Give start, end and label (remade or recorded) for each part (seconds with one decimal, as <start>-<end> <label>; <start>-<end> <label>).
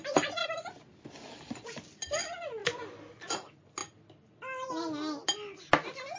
0.0-2.6 recorded; 2.6-3.1 remade; 3.1-6.2 recorded